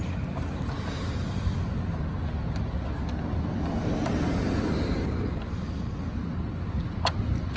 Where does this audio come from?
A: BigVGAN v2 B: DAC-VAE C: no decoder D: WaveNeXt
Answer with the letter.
C